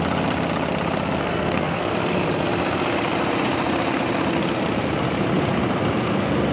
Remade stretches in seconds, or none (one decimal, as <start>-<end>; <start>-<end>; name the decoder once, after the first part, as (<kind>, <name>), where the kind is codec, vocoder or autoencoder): 1.2-1.9 (codec, SNAC)